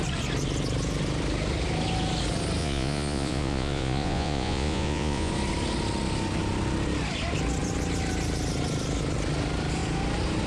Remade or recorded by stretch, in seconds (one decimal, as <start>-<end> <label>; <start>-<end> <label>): 0.0-2.6 recorded; 2.6-5.3 remade; 5.3-10.5 recorded